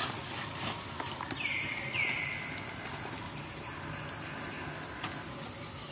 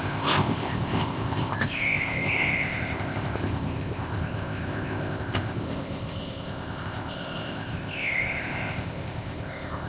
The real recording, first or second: first